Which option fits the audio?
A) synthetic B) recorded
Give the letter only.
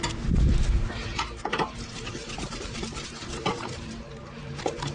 A